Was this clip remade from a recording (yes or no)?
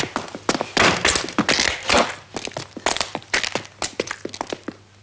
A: no